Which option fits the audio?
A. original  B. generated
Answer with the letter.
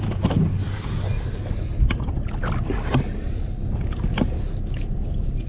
A